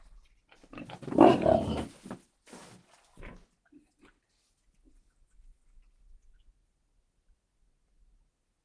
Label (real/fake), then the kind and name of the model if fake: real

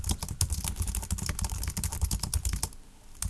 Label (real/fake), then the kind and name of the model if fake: real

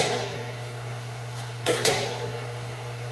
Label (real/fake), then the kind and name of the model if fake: fake, codec, SNAC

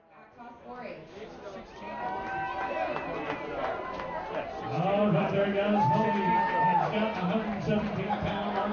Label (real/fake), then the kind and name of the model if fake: real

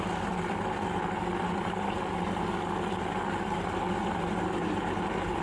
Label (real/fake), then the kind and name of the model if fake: real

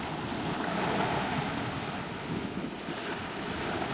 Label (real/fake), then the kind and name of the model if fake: real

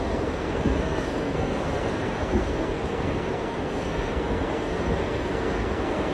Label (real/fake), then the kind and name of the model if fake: fake, codec, SNAC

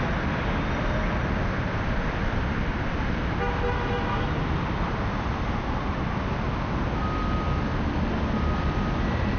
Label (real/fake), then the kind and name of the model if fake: real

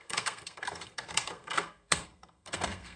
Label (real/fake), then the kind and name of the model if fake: fake, codec, SNAC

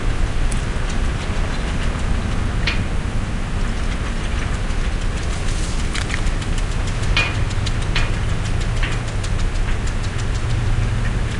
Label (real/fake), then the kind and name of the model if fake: real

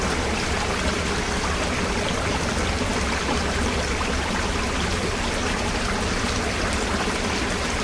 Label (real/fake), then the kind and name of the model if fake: real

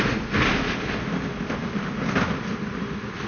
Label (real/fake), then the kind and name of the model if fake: real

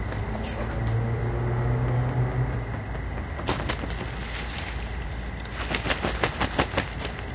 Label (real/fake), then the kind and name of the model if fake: real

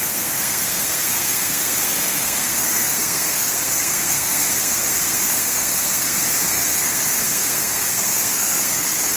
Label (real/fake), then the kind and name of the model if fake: fake, codec, SNAC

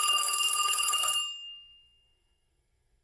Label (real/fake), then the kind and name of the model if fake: fake, codec, SNAC